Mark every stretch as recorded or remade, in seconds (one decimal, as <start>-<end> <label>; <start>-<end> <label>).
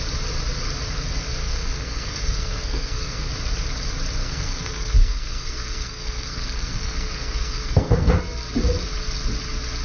0.0-1.4 recorded; 1.4-3.3 remade; 3.3-4.2 recorded; 4.2-8.2 remade; 8.2-9.8 recorded